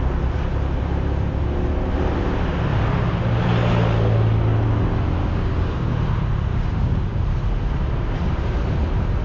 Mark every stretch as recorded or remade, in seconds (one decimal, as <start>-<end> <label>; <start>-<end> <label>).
0.0-5.2 recorded; 5.2-5.9 remade; 5.9-6.5 recorded; 6.5-7.2 remade; 7.2-9.2 recorded